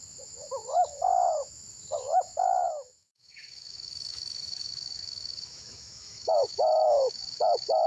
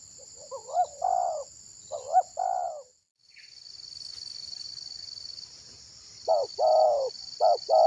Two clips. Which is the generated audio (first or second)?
first